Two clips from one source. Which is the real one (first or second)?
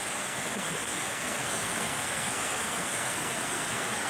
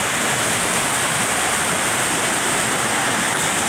second